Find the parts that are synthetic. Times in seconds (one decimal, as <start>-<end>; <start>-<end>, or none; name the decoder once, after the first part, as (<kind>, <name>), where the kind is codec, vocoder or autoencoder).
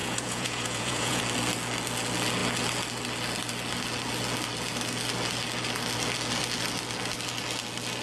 0.0-1.2 (vocoder, Vocos)